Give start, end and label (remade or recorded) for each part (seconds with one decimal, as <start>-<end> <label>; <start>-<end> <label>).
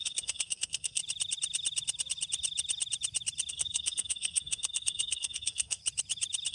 0.0-1.0 remade; 1.0-3.5 recorded; 3.5-5.8 remade; 5.8-6.5 recorded